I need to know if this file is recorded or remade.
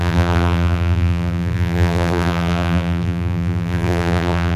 remade